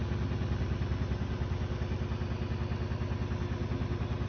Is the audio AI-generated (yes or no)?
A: no